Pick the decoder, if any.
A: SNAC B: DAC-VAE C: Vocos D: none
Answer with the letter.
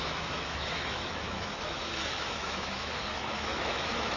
B